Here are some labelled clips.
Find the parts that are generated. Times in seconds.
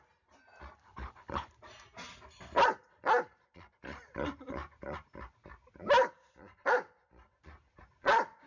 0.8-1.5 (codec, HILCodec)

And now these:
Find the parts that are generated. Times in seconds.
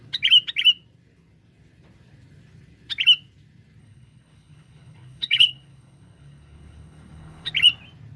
3.8-7.5 (codec, HILCodec)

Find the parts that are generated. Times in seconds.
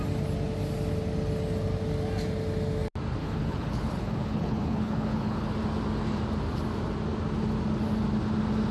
3.2-5.5 (codec, HILCodec)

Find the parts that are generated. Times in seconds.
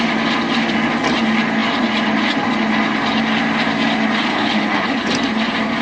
4.3-5.1 (codec, HILCodec)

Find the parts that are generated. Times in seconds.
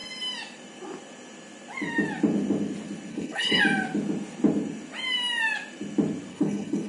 3.1-3.6 (codec, HILCodec); 6.3-6.9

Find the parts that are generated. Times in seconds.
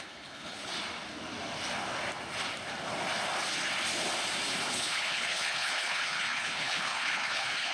0.0-0.7 (codec, HILCodec); 4.7-7.7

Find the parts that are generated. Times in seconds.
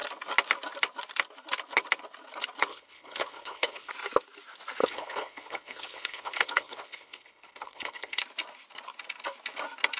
2.7-3.9 (codec, HILCodec); 4.8-8.2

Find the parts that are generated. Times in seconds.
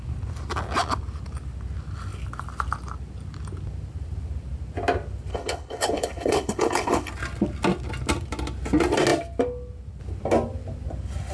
5.3-7.1 (codec, HILCodec)